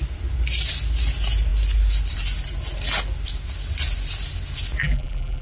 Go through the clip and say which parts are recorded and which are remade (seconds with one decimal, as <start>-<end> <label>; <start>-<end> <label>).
0.0-4.8 recorded; 4.8-5.4 remade